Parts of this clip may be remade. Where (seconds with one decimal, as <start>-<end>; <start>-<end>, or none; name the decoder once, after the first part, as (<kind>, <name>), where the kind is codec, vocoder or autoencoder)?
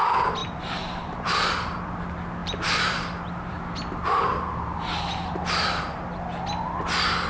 0.4-2.0 (vocoder, BigVGAN v2); 2.4-3.6; 4.3-6.1